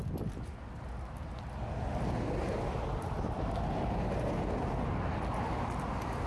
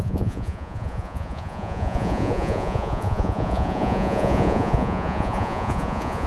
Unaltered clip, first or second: first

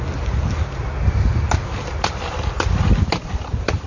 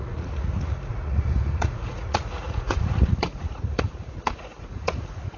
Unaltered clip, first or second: first